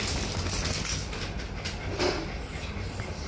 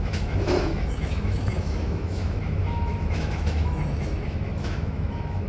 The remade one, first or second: second